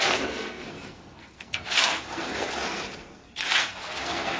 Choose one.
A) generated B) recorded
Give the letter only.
A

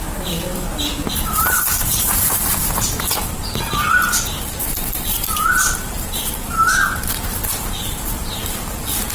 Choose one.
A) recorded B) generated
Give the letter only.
B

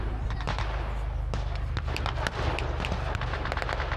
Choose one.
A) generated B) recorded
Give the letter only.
B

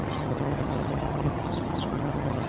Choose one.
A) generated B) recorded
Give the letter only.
A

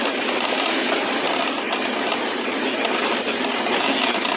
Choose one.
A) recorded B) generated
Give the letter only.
A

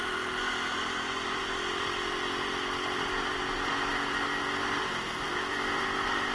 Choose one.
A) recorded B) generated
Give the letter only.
A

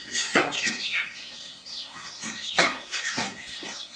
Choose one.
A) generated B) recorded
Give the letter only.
A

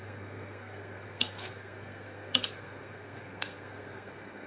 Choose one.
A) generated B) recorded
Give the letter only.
A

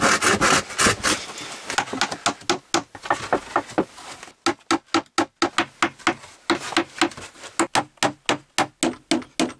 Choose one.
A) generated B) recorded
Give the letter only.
B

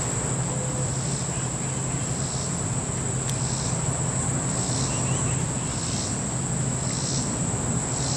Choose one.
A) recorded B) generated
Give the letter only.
A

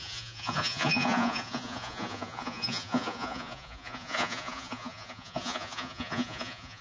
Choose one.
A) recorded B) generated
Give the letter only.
B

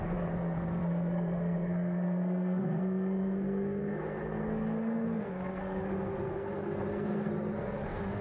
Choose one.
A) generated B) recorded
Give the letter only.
A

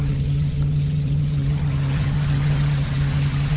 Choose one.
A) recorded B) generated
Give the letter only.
B